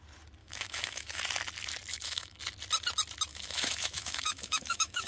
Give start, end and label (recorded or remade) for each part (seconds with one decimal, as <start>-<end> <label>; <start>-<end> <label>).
0.0-0.4 recorded; 0.4-1.2 remade; 1.2-1.9 recorded; 1.9-2.4 remade; 2.4-3.3 recorded; 3.3-5.1 remade